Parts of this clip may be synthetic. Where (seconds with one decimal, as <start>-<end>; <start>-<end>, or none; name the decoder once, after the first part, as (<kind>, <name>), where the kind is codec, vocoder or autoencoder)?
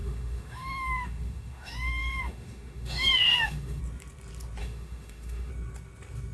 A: 0.0-3.8 (autoencoder, DAC-VAE); 4.6-5.5